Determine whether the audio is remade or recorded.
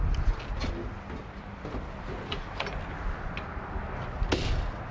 recorded